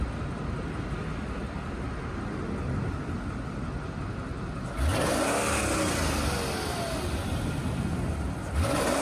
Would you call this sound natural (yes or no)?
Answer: yes